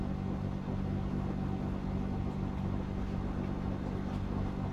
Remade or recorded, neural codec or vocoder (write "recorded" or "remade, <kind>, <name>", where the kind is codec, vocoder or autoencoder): recorded